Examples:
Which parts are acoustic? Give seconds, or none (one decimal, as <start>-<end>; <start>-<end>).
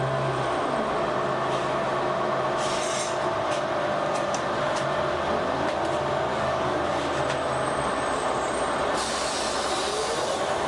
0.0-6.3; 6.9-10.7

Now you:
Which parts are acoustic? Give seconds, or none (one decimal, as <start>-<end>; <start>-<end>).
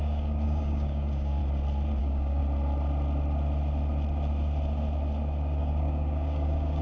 1.4-2.0; 2.4-5.6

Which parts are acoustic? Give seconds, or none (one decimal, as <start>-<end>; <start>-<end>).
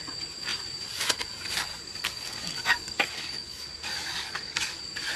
0.0-1.7; 4.8-5.2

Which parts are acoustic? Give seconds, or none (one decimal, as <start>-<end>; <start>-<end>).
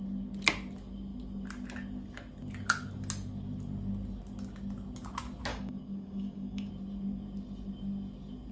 0.0-5.5; 6.7-8.5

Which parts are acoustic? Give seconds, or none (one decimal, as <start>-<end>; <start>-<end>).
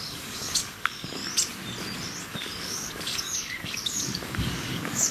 1.2-2.2